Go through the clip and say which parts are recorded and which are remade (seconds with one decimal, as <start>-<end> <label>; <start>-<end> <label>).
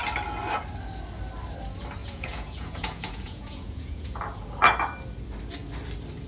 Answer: 0.0-2.0 recorded; 2.0-4.2 remade; 4.2-6.3 recorded